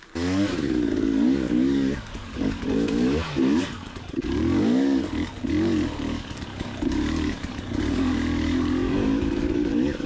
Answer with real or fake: fake